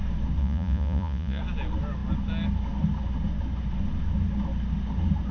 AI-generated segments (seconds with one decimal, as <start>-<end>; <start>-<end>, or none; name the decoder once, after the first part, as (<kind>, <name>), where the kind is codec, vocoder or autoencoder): 0.4-1.4 (vocoder, Vocos)